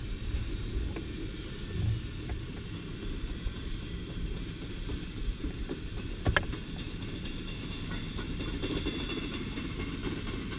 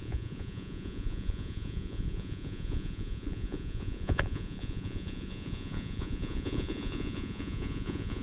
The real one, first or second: first